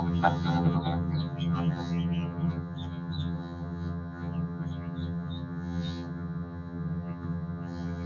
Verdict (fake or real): fake